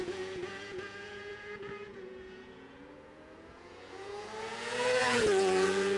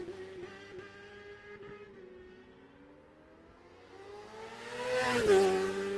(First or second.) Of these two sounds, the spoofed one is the first